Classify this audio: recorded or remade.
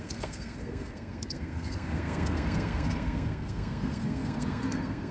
remade